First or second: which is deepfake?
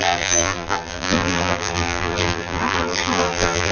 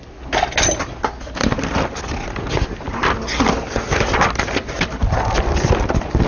first